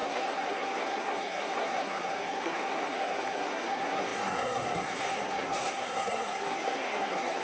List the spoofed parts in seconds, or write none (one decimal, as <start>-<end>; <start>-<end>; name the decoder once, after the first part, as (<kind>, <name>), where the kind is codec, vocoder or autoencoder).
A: 0.0-7.4 (codec, SNAC)